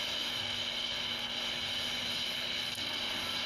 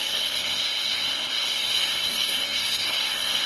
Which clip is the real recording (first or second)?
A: first